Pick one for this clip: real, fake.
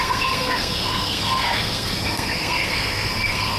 fake